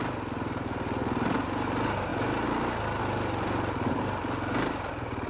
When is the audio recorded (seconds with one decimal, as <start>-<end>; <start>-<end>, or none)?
0.0-5.3